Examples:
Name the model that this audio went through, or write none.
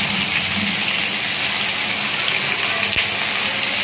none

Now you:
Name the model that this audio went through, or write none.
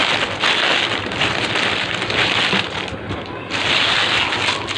none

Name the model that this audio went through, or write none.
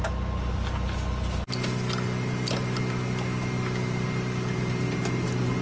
none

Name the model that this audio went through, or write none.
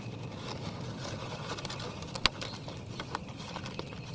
none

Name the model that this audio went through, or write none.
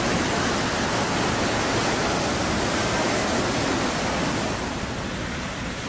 none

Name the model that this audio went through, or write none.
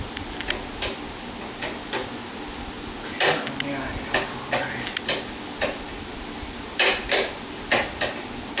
none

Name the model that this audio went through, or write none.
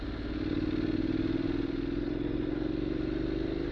none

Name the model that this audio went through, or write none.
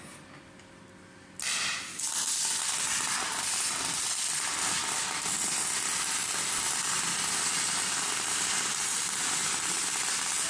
none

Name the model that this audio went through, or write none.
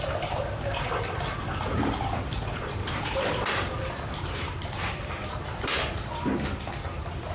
vocoder, BigVGAN v2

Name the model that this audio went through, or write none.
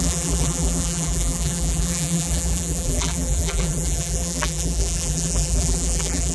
vocoder, BigVGAN v2